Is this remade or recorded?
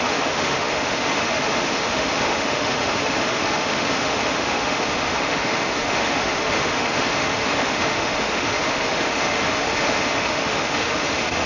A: remade